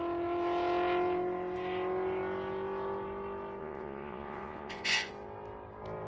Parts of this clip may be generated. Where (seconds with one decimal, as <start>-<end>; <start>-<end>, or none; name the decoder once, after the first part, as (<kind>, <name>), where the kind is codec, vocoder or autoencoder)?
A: 3.6-5.1 (vocoder, Vocos)